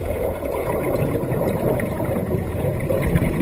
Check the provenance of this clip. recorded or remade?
remade